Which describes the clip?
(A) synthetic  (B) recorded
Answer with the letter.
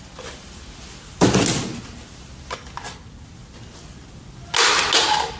B